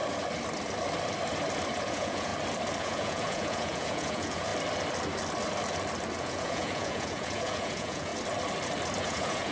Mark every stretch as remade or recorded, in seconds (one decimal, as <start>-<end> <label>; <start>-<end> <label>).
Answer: 0.0-1.8 recorded; 1.8-2.3 remade; 2.3-2.8 recorded; 2.8-4.5 remade; 4.5-6.2 recorded; 6.2-8.1 remade; 8.1-9.0 recorded; 9.0-9.5 remade